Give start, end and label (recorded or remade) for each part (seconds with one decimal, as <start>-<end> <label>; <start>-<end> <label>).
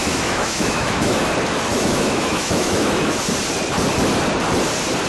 0.0-1.2 remade; 1.2-1.7 recorded; 1.7-3.2 remade; 3.2-5.1 recorded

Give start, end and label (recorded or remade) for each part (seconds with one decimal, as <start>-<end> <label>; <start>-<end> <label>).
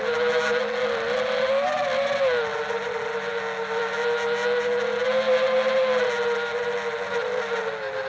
0.0-8.1 recorded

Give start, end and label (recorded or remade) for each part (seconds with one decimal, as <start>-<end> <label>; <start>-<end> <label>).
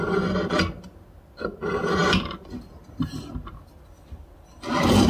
0.0-5.1 recorded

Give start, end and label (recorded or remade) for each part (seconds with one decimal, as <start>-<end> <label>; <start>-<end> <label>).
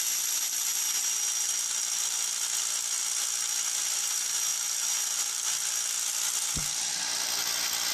0.0-7.9 recorded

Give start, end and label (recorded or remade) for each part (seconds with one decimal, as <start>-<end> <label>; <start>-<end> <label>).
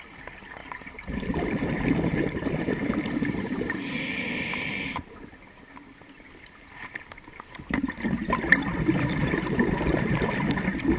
0.0-0.6 recorded; 0.6-5.1 remade; 5.1-9.2 recorded; 9.2-10.5 remade; 10.5-11.0 recorded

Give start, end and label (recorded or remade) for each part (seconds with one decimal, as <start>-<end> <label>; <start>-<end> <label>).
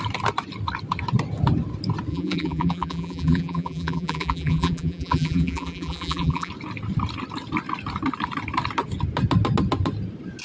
0.0-2.1 recorded; 2.1-6.5 remade; 6.5-10.4 recorded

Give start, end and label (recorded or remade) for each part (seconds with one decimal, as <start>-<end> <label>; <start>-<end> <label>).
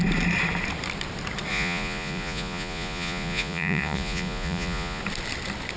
0.0-1.5 recorded; 1.5-5.0 remade; 5.0-5.8 recorded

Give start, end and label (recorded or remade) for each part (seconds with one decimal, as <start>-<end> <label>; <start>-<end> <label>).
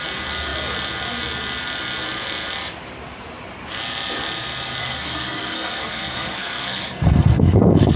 0.0-4.8 recorded; 4.8-8.0 remade